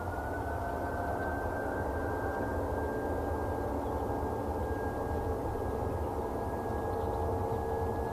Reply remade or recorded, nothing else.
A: recorded